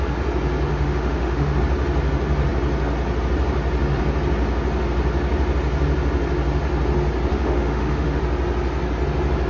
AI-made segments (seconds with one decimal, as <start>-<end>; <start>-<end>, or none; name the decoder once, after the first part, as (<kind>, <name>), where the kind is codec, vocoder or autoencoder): 0.7-1.6 (autoencoder, DAC-VAE); 7.3-8.2